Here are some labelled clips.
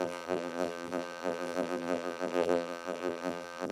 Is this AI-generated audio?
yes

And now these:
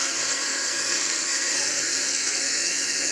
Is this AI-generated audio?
yes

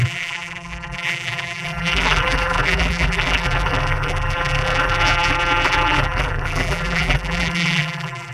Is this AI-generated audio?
yes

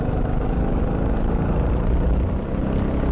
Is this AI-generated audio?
no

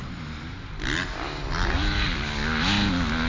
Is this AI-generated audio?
no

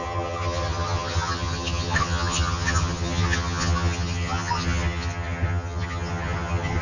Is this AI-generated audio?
yes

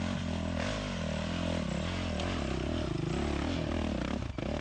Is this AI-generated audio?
no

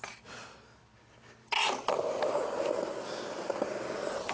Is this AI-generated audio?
no